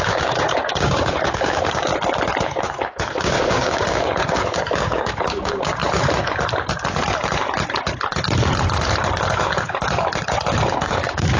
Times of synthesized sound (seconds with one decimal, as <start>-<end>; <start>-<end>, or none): 0.0-1.9; 2.4-5.8; 10.7-11.4